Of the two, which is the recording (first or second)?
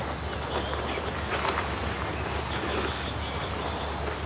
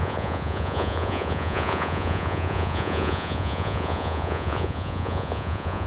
first